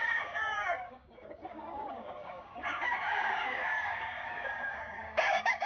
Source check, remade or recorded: remade